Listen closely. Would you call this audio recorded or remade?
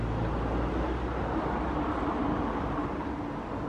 recorded